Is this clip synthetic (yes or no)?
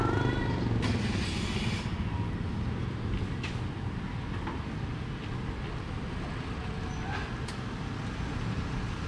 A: no